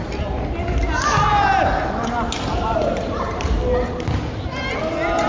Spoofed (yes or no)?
no